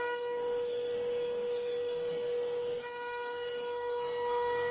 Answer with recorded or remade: remade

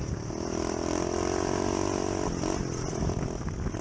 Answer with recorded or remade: recorded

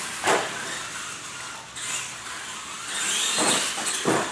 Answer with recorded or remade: recorded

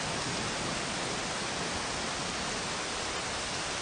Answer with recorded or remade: recorded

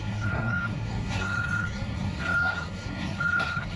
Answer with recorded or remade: remade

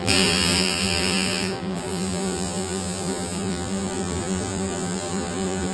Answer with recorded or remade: remade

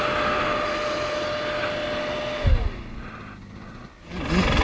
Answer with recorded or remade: recorded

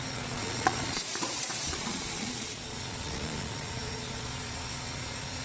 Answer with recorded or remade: remade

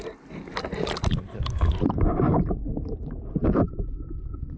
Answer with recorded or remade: recorded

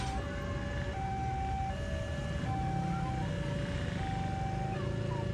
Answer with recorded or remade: recorded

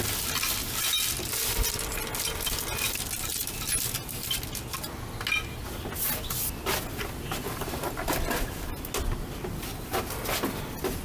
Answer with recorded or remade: recorded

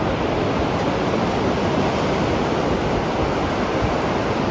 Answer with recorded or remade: recorded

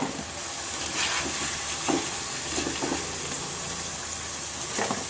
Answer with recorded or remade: recorded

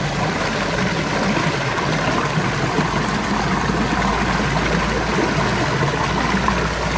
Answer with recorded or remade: recorded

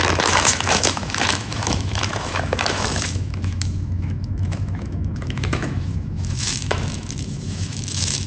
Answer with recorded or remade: remade